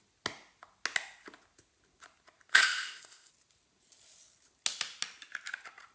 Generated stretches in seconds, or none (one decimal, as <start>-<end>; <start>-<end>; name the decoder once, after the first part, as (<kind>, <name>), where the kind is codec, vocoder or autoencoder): 2.5-3.3 (codec, ZipCodec)